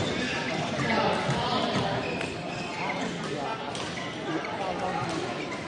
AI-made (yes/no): no